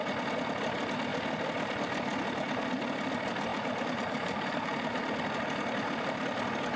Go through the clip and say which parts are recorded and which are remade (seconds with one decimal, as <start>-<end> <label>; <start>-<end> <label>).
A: 0.0-3.5 recorded; 3.5-5.0 remade; 5.0-6.8 recorded